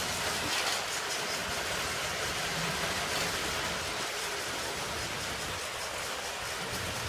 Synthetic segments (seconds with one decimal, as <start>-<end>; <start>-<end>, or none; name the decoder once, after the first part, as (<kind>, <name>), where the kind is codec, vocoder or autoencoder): none